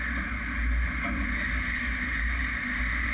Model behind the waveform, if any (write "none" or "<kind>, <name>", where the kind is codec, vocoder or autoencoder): none